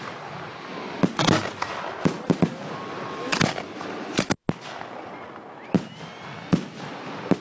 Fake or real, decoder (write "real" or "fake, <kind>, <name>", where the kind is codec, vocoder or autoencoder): real